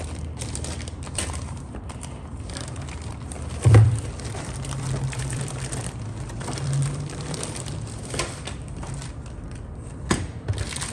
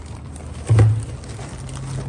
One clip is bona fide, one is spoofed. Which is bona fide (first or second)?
second